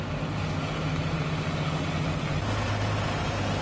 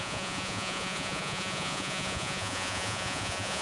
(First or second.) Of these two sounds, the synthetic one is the second